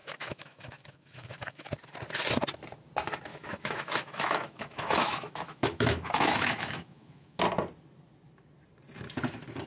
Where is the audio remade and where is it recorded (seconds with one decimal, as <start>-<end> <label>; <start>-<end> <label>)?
0.0-1.7 remade; 1.7-3.3 recorded; 3.3-7.4 remade; 7.4-9.7 recorded